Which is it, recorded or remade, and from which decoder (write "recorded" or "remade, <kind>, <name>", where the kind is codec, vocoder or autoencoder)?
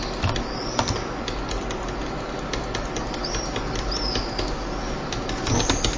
recorded